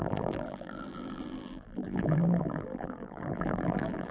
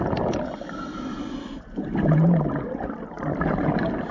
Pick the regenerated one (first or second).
first